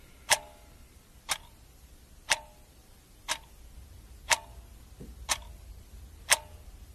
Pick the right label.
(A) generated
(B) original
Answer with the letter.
B